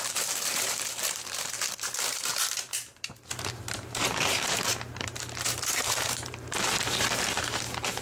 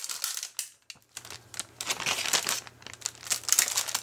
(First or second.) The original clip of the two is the second